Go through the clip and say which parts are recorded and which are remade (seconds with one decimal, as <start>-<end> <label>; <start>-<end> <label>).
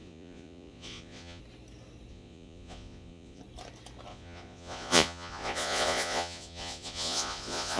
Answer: 0.0-1.4 remade; 1.4-2.1 recorded; 2.1-3.4 remade; 3.4-4.1 recorded; 4.1-7.8 remade